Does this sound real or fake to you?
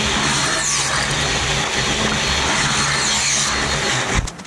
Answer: real